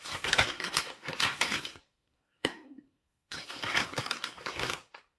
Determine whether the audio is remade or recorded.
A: remade